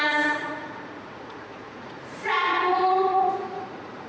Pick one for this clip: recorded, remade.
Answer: remade